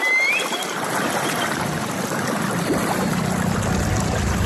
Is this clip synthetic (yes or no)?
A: no